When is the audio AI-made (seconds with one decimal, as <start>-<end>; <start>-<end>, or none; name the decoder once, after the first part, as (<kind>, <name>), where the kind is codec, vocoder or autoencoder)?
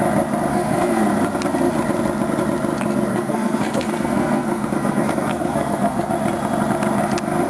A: 0.5-1.0 (codec, SNAC); 3.1-6.1